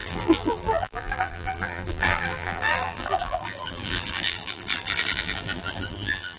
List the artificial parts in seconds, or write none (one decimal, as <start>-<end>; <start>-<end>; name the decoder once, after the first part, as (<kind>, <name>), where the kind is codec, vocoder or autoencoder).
0.0-6.4 (vocoder, BigVGAN v2)